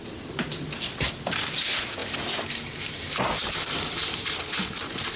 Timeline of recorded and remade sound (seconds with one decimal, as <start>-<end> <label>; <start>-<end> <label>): 0.0-5.2 recorded